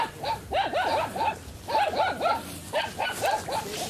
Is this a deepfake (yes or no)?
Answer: no